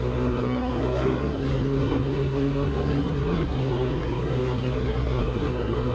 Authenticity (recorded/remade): remade